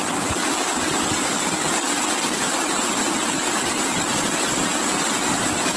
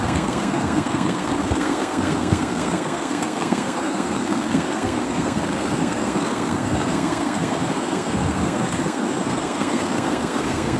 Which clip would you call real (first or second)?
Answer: first